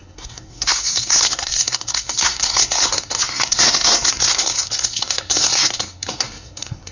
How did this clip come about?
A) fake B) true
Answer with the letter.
A